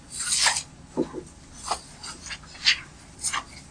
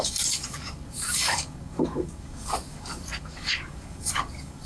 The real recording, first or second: first